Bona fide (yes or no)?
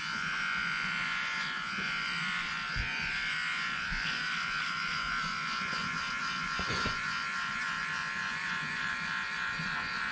no